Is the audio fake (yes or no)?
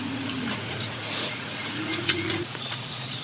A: yes